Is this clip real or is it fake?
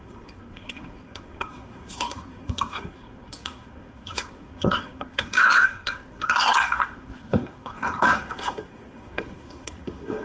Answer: fake